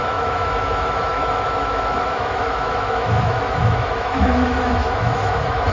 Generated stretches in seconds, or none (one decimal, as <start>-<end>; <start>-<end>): 0.0-5.7